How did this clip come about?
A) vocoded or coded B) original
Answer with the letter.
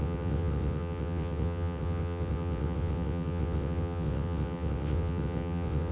A